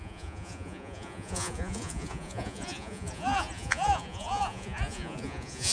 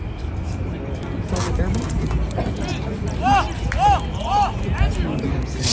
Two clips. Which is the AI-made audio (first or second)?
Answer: first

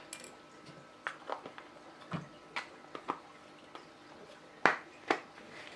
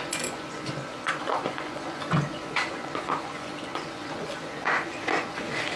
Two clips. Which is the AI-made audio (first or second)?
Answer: second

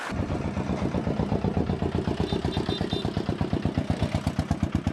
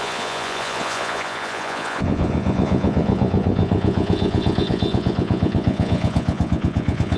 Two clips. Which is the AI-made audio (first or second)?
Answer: second